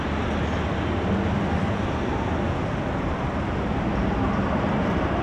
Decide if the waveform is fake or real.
real